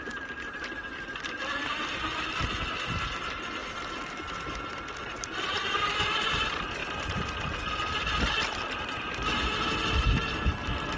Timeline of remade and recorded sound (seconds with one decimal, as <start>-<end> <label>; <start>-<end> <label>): 0.0-3.6 remade; 3.6-5.2 recorded; 5.2-6.8 remade; 6.8-7.7 recorded; 7.7-11.0 remade

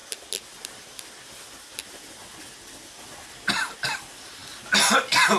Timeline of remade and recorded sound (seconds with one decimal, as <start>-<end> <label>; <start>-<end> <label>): 0.0-5.4 recorded

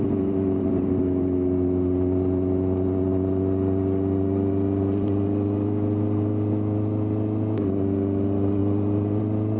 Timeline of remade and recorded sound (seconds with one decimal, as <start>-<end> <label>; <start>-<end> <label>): 0.0-9.6 recorded

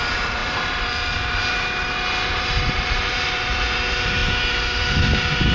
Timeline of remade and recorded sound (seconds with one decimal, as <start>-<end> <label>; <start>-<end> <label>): 0.0-0.4 recorded; 0.4-1.4 remade; 1.4-2.3 recorded; 2.3-3.6 remade; 3.6-5.5 recorded